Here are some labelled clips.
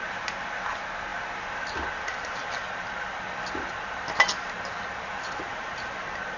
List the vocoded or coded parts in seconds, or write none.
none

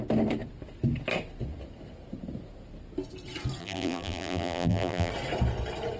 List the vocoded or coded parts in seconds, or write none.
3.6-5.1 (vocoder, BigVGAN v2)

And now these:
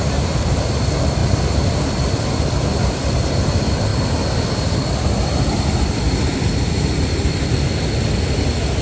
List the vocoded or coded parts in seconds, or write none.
none

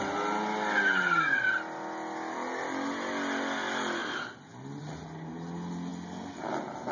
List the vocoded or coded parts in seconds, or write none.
none

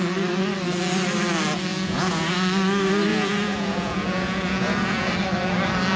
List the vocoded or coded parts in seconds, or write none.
1.7-2.3 (vocoder, Vocos); 3.1-5.1

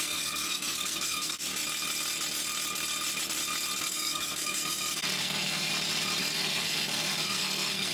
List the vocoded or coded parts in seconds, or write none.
0.0-1.5 (codec, SNAC); 3.8-5.7; 6.2-7.9